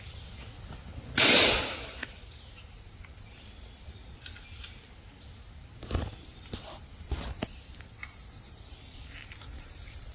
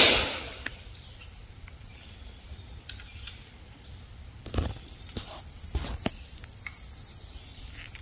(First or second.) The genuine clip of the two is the first